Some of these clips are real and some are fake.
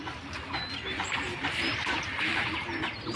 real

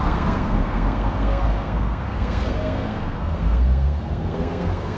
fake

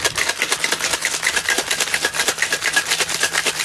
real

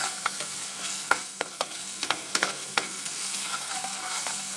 fake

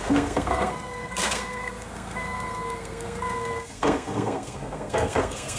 fake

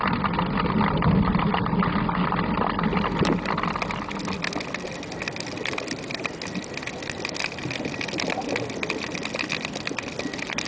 real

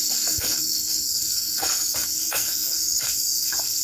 fake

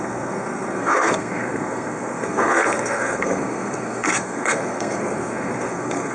fake